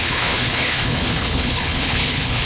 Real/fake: fake